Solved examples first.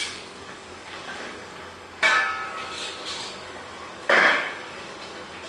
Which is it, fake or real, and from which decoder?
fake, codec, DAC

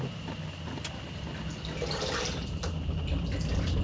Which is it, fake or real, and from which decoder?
real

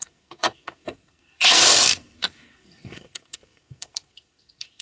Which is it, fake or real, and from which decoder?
fake, codec, SNAC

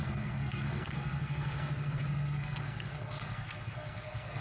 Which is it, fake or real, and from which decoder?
fake, codec, SNAC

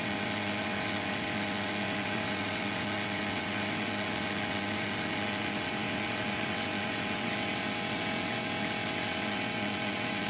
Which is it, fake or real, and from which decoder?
fake, vocoder, WaveNeXt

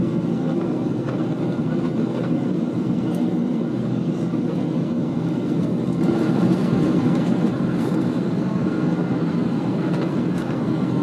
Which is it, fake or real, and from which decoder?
fake, codec, SNAC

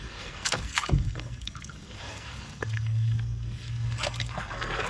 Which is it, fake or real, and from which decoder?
fake, codec, SNAC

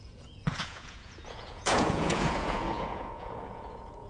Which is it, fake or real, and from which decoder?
fake, vocoder, Vocos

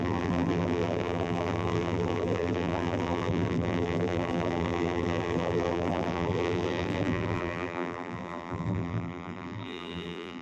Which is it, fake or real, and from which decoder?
fake, vocoder, BigVGAN v2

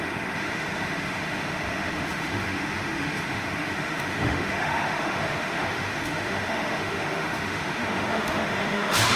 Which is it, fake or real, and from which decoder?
fake, autoencoder, DAC-VAE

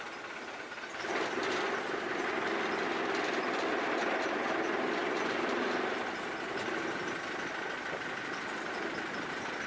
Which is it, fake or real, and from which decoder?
real